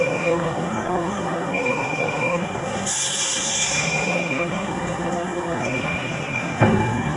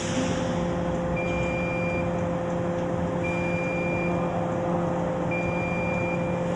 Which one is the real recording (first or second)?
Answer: second